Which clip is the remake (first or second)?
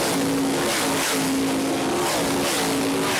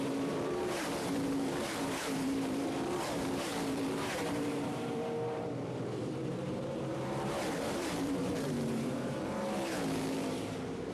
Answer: second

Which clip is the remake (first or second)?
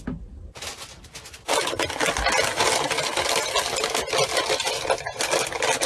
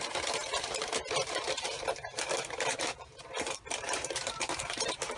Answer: second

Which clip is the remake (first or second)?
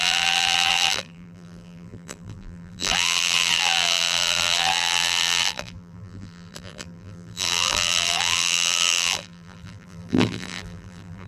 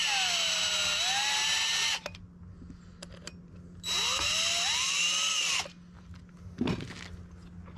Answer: first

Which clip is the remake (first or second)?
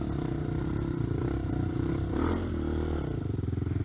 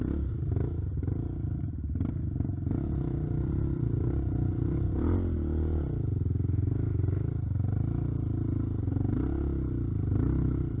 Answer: first